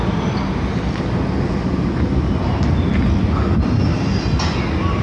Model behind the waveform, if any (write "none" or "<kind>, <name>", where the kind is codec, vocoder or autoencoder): none